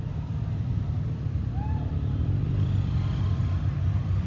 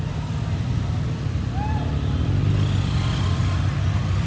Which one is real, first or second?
second